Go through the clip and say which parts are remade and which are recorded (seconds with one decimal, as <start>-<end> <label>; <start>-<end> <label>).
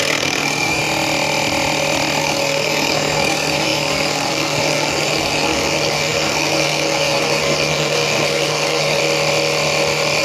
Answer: 0.0-0.8 remade; 0.8-2.2 recorded; 2.2-9.0 remade; 9.0-10.2 recorded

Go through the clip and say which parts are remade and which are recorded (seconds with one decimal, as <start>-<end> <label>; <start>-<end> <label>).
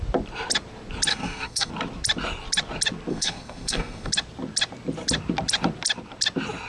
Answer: 0.0-1.1 recorded; 1.1-1.7 remade; 1.7-3.1 recorded; 3.1-4.1 remade; 4.1-6.7 recorded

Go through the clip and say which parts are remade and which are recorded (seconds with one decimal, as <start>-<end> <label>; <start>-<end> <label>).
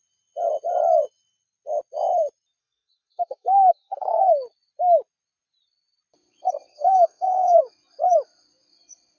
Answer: 0.0-2.6 recorded; 2.6-4.3 remade; 4.3-6.7 recorded; 6.7-7.6 remade; 7.6-9.2 recorded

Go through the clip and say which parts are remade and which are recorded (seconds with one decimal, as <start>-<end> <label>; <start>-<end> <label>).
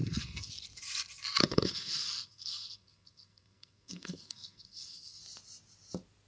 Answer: 0.0-0.5 remade; 0.5-1.4 recorded; 1.4-5.2 remade; 5.2-6.3 recorded